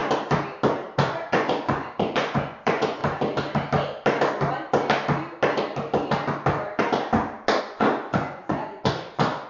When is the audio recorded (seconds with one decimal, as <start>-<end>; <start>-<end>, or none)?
0.0-1.0; 3.0-7.6